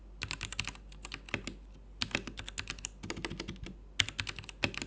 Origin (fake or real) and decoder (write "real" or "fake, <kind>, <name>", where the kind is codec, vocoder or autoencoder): real